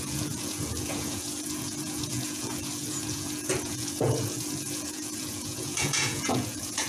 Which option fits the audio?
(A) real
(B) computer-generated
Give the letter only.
B